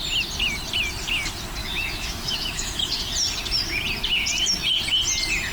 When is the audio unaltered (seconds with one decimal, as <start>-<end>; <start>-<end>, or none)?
0.0-1.6; 2.9-5.5

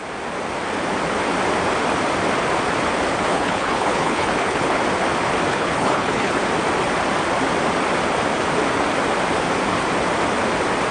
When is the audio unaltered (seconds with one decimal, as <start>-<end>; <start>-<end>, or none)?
0.0-3.3; 4.8-5.5; 6.3-10.9

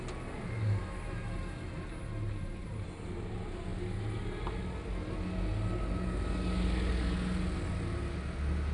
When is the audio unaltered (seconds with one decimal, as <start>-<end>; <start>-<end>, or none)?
0.0-8.7

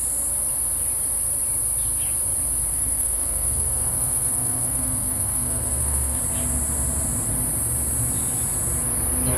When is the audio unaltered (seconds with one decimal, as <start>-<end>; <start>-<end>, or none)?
0.0-2.7; 6.2-9.4

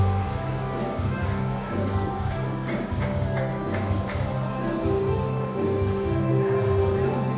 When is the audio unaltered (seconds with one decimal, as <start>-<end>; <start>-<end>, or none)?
3.5-4.5; 6.3-7.4

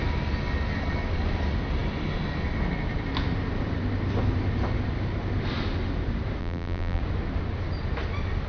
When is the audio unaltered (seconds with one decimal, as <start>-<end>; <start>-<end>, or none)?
0.0-6.4; 7.0-8.5

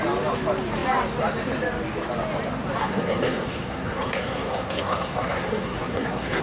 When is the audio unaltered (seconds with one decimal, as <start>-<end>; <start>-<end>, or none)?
0.0-2.8

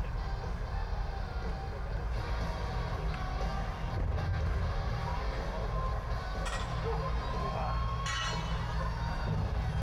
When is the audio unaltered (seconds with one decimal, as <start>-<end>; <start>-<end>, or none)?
0.0-9.8